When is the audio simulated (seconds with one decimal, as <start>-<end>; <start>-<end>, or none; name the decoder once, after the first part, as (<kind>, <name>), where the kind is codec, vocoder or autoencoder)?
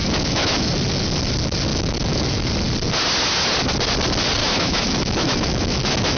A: 0.0-0.7 (autoencoder, DAC-VAE); 1.7-2.5; 4.4-6.2